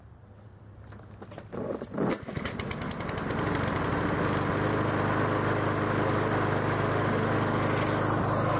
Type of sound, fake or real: real